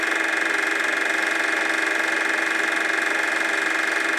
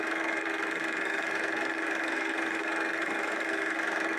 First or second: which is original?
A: first